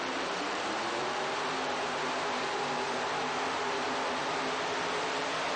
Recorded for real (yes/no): no